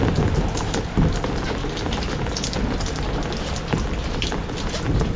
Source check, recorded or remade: recorded